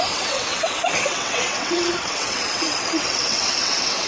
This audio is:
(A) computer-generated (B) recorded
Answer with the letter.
A